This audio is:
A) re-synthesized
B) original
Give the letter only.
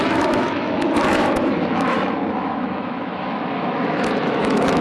A